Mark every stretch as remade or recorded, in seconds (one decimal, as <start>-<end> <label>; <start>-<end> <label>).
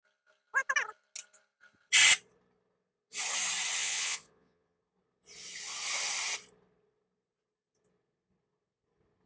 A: 0.0-3.8 recorded; 3.8-4.8 remade; 4.8-9.3 recorded